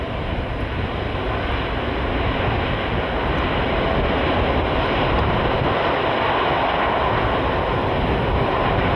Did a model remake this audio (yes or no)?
no